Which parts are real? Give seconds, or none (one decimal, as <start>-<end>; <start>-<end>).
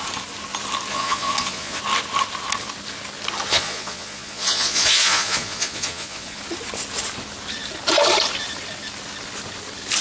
0.0-0.9; 1.8-3.5; 6.4-10.0